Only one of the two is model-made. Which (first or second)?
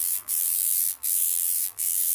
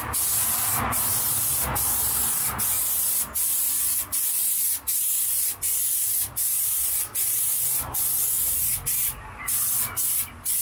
first